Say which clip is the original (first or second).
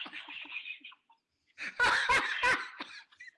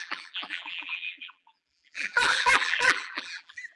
first